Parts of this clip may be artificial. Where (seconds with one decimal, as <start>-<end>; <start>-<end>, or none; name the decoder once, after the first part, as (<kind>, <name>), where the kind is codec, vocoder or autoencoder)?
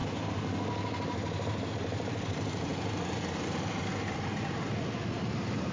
1.7-2.7 (vocoder, BigVGAN v2); 3.3-3.9; 5.1-5.7